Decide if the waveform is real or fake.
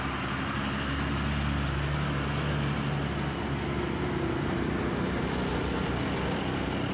real